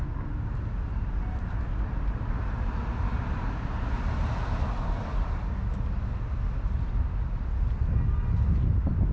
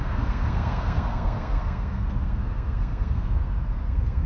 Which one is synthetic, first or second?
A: second